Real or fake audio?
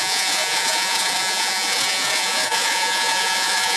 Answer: fake